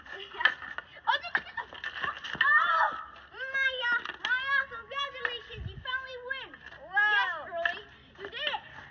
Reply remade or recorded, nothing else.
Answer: recorded